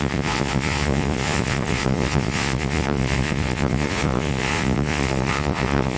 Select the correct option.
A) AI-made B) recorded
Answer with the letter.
A